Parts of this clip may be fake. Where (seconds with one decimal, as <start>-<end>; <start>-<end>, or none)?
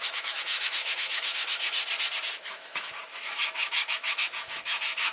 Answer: 0.0-1.8; 2.4-5.1